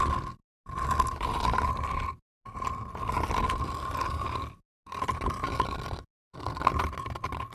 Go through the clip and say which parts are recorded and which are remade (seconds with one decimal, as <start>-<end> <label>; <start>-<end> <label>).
0.0-6.1 recorded; 6.1-6.7 remade; 6.7-7.5 recorded